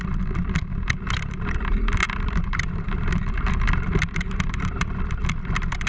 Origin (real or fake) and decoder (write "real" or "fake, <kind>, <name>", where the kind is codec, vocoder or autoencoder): fake, vocoder, BigVGAN v2